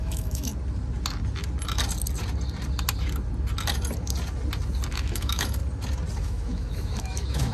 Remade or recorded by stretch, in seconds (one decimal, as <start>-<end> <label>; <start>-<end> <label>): 0.0-0.5 remade; 0.5-4.9 recorded; 4.9-5.6 remade; 5.6-6.2 recorded; 6.2-7.5 remade